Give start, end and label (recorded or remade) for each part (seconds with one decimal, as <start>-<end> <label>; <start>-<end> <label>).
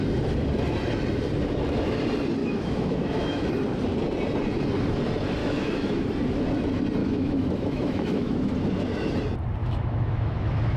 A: 0.0-2.4 recorded; 2.4-3.5 remade; 3.5-5.4 recorded; 5.4-6.0 remade; 6.0-7.0 recorded; 7.0-8.5 remade; 8.5-9.6 recorded; 9.6-10.8 remade